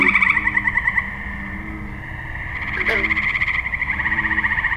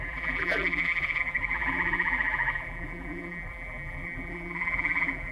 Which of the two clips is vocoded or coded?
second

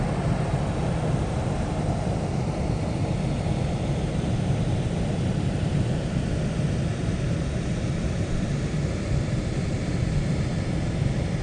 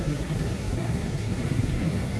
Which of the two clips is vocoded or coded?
second